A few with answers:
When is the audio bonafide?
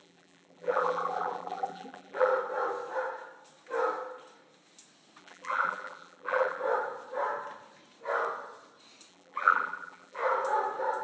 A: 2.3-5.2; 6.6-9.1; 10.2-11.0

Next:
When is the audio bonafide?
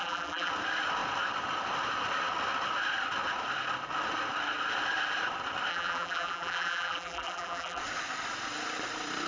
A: 0.5-5.7; 7.8-9.3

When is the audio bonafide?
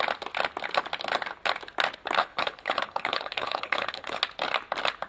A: 0.0-2.2; 4.2-5.1